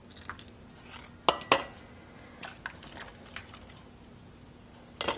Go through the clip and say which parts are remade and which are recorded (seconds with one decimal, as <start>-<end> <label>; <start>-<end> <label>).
0.0-3.1 recorded; 3.1-5.2 remade